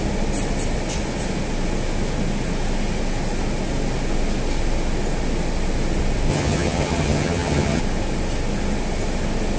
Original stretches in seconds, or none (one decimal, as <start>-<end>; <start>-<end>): 0.0-6.3; 7.8-9.6